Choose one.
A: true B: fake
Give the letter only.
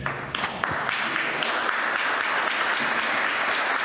A